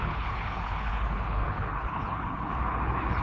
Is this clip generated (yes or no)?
yes